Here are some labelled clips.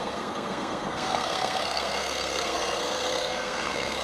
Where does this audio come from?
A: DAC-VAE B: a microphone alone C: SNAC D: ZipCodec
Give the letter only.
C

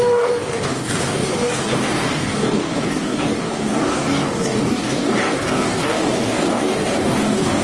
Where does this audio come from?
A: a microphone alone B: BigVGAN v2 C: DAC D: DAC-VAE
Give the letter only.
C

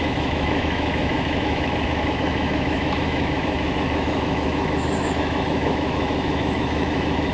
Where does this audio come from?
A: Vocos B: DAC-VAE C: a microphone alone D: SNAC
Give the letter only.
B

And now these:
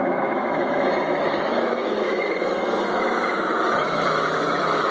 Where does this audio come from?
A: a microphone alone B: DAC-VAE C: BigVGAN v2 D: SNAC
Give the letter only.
B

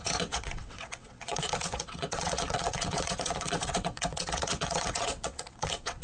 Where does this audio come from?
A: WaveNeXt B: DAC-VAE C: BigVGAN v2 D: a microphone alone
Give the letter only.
A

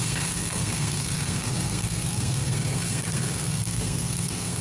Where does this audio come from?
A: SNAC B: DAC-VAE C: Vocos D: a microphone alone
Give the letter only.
A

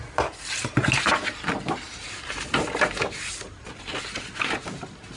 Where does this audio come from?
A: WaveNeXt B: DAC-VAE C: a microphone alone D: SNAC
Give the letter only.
C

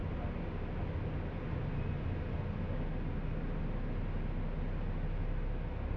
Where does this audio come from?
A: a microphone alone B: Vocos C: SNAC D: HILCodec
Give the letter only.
A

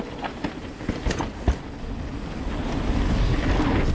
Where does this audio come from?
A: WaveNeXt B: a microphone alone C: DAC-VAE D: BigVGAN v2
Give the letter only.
B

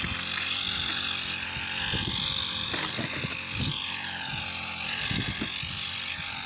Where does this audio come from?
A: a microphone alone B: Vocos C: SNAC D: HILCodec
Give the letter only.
A